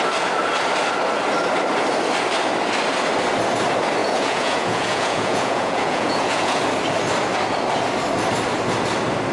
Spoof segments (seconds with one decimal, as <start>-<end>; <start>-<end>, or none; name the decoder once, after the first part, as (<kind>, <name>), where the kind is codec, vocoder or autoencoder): 4.0-6.6 (vocoder, Vocos)